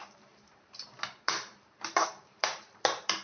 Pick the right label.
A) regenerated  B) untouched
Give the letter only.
A